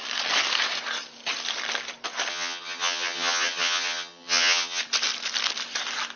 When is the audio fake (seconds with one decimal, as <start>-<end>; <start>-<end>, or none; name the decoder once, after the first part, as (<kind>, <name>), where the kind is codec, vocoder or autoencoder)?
2.3-4.8 (vocoder, HiFi-GAN)